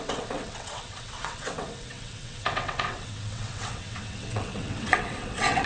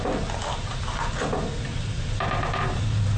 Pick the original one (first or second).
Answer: second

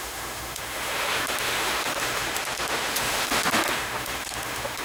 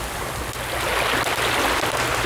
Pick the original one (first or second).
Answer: second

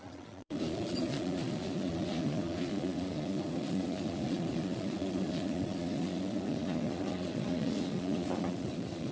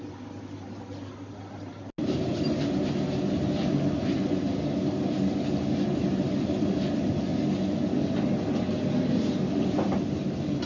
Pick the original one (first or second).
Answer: second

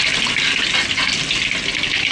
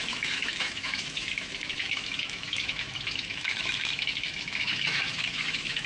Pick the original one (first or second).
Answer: first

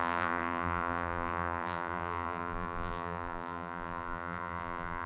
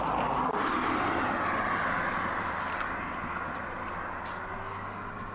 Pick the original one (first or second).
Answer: second